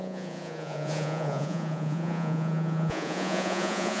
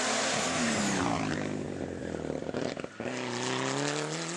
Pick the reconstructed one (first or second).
first